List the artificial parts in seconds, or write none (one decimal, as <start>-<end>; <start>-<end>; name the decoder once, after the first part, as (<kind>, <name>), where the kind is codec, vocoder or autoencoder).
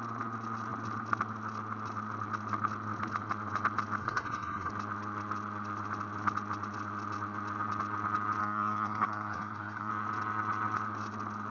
4.0-4.7 (codec, SNAC); 8.4-9.9